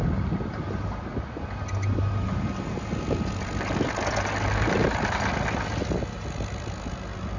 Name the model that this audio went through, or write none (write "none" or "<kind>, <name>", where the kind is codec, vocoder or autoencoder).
none